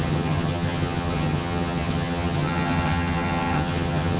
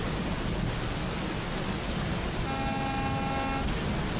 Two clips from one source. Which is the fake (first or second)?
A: first